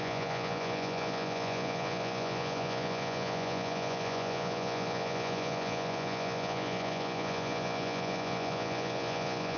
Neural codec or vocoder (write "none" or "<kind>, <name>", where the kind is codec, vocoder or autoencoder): vocoder, Vocos